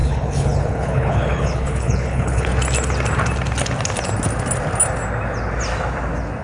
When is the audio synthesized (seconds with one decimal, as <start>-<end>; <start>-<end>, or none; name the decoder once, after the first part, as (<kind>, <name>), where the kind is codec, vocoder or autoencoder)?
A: 0.0-2.5 (codec, HILCodec)